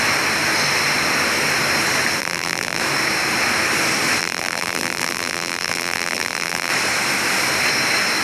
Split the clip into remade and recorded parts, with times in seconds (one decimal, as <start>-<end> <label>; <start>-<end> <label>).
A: 0.0-2.2 recorded; 2.2-2.8 remade; 2.8-4.2 recorded; 4.2-6.7 remade; 6.7-8.2 recorded